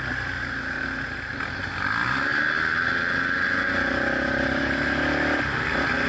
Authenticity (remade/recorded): recorded